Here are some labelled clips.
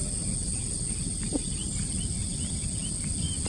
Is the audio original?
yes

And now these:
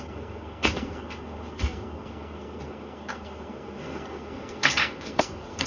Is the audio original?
no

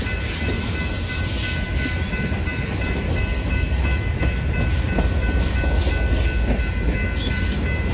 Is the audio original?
yes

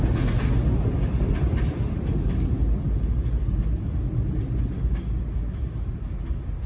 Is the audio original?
yes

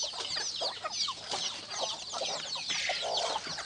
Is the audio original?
yes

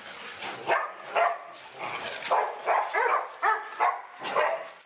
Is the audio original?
yes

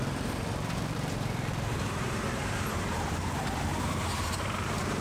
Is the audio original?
no